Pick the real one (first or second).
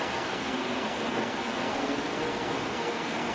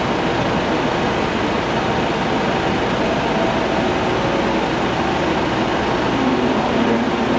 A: second